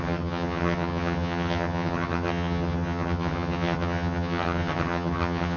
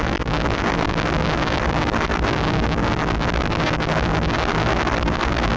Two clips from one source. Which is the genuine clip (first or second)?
second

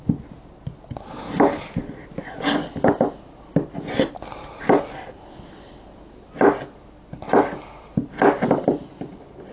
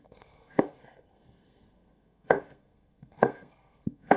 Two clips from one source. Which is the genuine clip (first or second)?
first